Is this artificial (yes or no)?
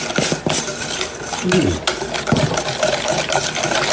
yes